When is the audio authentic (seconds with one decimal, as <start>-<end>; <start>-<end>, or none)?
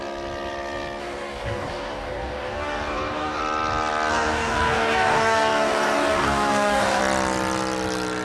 0.0-1.0; 3.4-4.1; 7.0-8.2